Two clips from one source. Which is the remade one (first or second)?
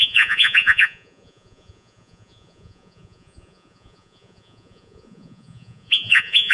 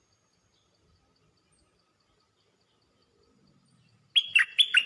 first